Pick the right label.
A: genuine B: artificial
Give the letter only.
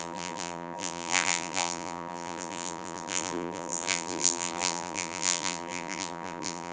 B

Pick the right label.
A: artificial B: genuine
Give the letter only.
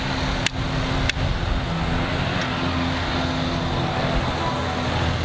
B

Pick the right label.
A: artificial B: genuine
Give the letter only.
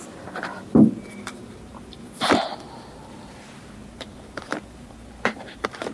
A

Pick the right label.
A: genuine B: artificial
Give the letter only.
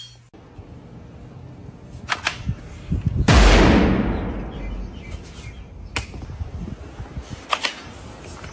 A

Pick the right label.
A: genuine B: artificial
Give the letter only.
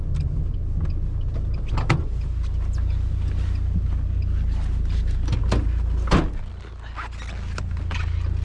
A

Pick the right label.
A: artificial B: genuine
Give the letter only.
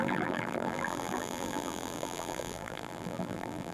A